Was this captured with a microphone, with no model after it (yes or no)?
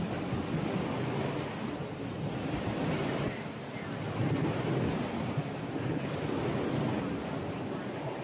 yes